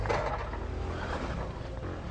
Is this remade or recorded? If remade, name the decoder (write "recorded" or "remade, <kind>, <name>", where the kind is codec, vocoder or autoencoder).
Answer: recorded